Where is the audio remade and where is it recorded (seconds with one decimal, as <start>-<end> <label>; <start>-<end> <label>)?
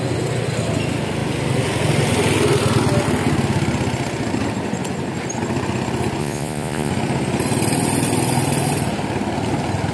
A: 0.0-6.2 recorded; 6.2-6.9 remade; 6.9-9.9 recorded